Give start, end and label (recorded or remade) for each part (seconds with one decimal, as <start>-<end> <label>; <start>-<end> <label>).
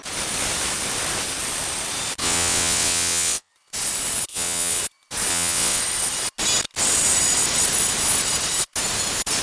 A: 0.0-2.2 recorded; 2.2-3.5 remade; 3.5-4.3 recorded; 4.3-4.8 remade; 4.8-5.3 recorded; 5.3-5.8 remade; 5.8-9.4 recorded